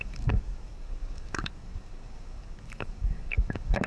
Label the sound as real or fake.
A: fake